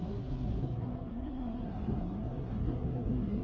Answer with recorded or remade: remade